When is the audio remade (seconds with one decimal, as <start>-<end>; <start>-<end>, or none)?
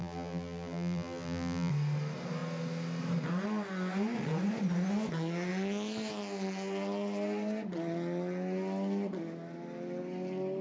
0.0-1.7